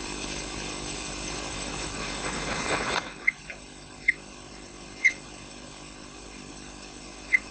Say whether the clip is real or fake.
fake